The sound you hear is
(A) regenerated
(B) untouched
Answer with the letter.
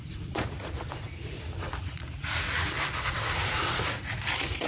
A